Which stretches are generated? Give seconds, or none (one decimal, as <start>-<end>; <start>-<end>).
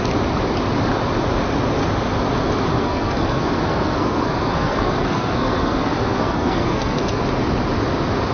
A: 2.7-7.2